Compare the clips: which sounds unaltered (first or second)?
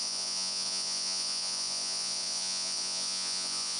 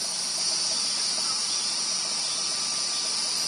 second